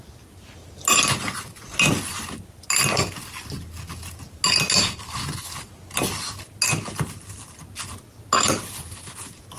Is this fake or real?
real